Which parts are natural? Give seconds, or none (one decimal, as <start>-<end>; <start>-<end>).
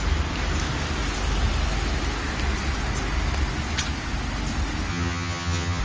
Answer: 0.0-4.9